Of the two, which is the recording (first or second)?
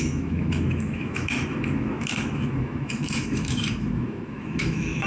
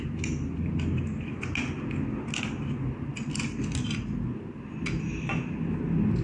second